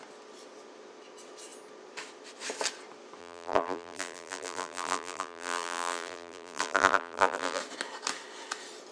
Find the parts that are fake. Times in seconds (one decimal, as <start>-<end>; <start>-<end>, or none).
3.2-7.6